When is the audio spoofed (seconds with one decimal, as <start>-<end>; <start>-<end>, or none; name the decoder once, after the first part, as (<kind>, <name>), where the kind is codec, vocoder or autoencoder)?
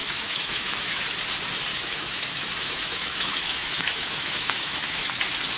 0.0-1.0 (autoencoder, DAC-VAE); 1.7-5.1